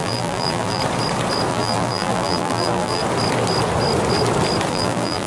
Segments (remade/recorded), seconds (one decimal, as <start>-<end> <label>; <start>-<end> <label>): 0.0-0.8 remade; 0.8-1.5 recorded; 1.5-3.0 remade; 3.0-4.7 recorded; 4.7-5.3 remade